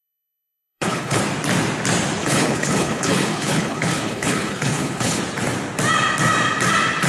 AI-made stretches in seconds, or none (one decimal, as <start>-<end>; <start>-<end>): 0.0-1.2; 2.2-5.2